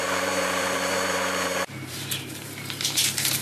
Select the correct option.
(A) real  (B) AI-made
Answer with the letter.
B